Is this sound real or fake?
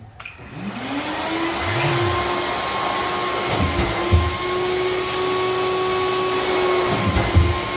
real